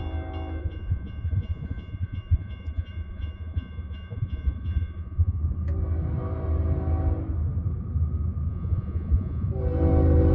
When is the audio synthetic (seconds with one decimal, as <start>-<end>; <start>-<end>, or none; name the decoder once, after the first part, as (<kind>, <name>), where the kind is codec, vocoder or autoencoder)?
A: 0.6-5.4 (vocoder, Vocos); 8.5-9.5